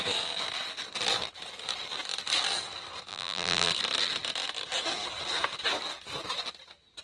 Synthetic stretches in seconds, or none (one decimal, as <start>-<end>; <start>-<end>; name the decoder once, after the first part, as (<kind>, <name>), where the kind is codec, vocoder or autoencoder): 3.1-3.7 (vocoder, BigVGAN v2)